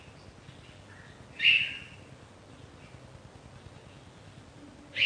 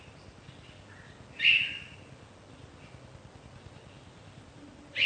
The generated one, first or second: second